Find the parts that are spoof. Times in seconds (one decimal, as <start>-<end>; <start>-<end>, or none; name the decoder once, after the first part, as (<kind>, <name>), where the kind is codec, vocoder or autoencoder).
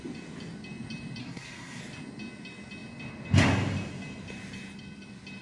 1.2-1.8 (codec, SNAC)